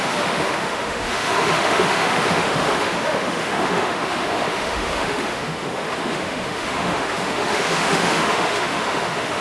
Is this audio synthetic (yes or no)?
yes